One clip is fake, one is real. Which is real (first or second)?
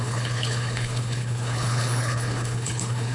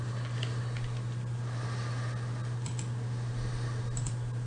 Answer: second